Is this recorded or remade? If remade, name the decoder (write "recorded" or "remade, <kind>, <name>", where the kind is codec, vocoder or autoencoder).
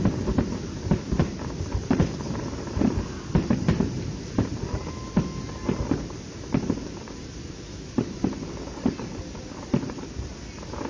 recorded